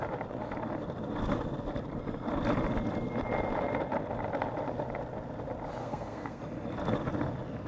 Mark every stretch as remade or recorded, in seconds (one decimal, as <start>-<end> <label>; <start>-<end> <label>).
0.0-5.8 recorded; 5.8-6.4 remade; 6.4-7.7 recorded